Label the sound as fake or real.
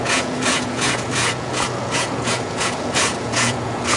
fake